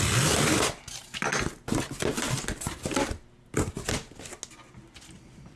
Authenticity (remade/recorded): recorded